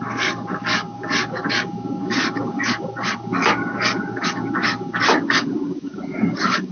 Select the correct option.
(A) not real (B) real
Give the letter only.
A